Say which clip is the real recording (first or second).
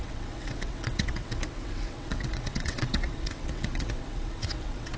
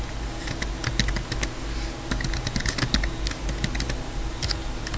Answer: second